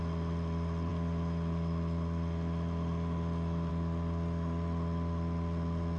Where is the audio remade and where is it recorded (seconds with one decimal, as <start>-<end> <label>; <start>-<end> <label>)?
0.0-6.0 recorded

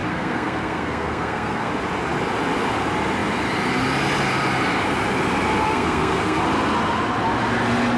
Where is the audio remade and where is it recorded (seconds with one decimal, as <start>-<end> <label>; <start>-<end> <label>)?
0.0-1.7 remade; 1.7-5.6 recorded; 5.6-6.4 remade; 6.4-8.0 recorded

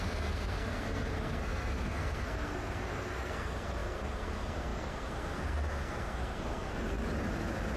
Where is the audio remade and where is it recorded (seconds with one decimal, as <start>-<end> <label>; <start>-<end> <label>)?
0.0-7.0 remade; 7.0-7.8 recorded

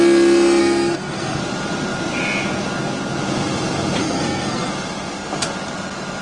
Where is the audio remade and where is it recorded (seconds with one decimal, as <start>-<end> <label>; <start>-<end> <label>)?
0.0-0.6 recorded; 0.6-1.4 remade; 1.4-4.0 recorded; 4.0-4.7 remade; 4.7-6.2 recorded